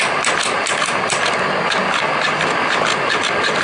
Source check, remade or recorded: recorded